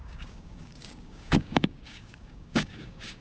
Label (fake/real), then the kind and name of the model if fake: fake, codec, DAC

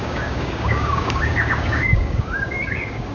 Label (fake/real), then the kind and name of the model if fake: fake, codec, DAC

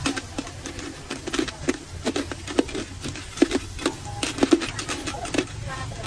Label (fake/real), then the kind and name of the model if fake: real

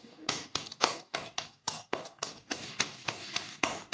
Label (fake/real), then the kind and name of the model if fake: fake, codec, DAC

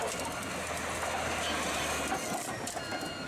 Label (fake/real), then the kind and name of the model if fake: real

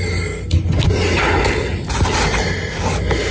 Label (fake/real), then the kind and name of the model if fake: real